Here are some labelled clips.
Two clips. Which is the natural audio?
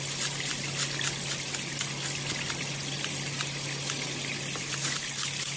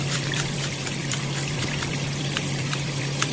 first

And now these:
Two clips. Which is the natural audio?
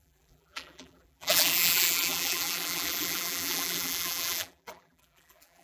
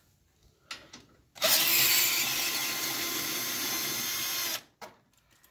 second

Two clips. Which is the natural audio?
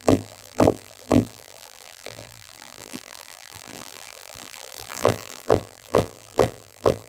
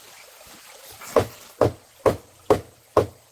second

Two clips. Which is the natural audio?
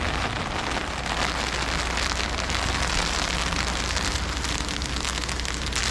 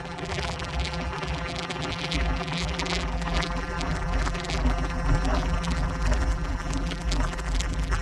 first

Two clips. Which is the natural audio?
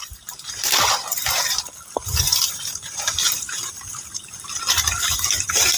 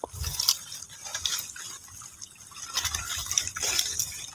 second